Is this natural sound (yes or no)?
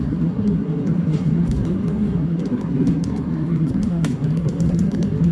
no